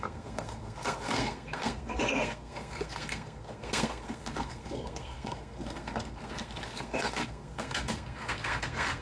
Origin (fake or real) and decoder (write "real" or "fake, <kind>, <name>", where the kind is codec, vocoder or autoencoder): fake, codec, SNAC